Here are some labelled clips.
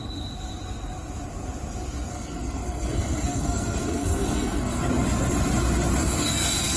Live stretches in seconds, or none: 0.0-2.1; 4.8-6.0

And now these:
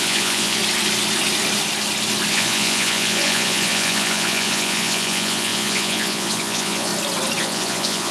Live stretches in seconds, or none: 0.6-2.3; 6.9-7.4

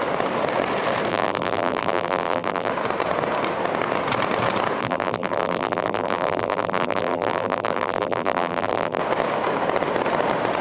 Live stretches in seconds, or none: 0.0-1.1; 2.7-4.8; 9.0-10.6

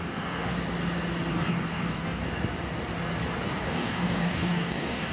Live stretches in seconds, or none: 0.5-1.3; 2.2-3.6

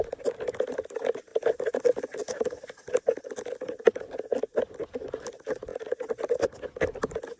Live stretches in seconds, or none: 0.0-7.4

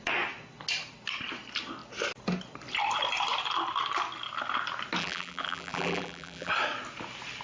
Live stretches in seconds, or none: 0.0-5.0; 6.5-7.4